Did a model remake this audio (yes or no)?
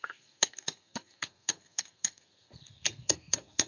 yes